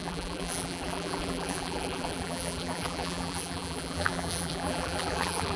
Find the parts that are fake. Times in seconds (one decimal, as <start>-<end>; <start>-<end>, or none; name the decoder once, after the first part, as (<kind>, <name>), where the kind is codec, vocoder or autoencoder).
0.0-5.6 (vocoder, BigVGAN v2)